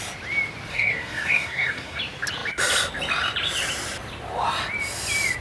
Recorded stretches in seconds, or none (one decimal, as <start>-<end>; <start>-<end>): 0.0-0.7; 2.0-5.4